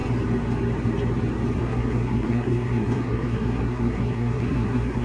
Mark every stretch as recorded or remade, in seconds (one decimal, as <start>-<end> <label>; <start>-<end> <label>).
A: 0.0-1.6 recorded; 1.6-5.0 remade